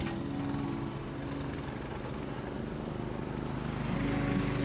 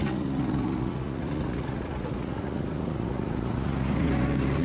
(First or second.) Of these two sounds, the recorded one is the first